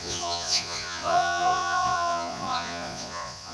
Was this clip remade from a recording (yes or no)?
yes